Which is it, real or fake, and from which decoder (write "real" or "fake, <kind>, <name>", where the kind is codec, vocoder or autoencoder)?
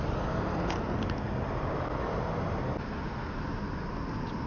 real